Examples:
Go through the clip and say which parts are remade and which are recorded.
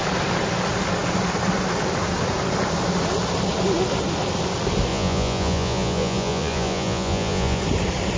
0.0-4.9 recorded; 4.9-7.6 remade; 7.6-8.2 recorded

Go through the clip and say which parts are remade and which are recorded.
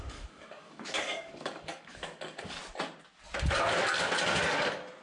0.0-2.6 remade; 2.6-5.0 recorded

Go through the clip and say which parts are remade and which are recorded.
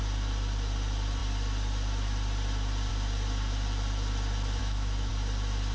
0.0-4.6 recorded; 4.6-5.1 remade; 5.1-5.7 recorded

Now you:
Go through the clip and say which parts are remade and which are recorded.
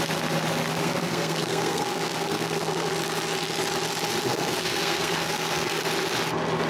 0.0-0.8 recorded; 0.8-2.9 remade; 2.9-4.3 recorded; 4.3-5.8 remade; 5.8-6.7 recorded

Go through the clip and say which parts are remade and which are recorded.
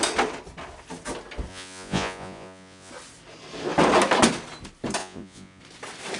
0.0-1.5 recorded; 1.5-2.9 remade; 2.9-5.0 recorded; 5.0-5.6 remade; 5.6-6.2 recorded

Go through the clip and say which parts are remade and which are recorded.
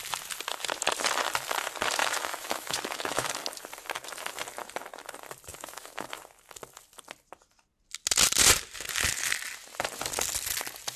0.0-2.0 recorded; 2.0-3.3 remade; 3.3-5.5 recorded; 5.5-6.1 remade; 6.1-11.0 recorded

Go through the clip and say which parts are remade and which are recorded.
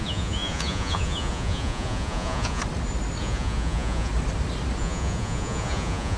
0.0-2.6 remade; 2.6-3.2 recorded; 3.2-4.1 remade; 4.1-4.8 recorded; 4.8-6.2 remade